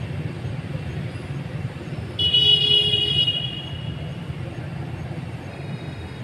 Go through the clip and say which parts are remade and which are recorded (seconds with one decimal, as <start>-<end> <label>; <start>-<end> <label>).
0.0-5.5 recorded; 5.5-6.2 remade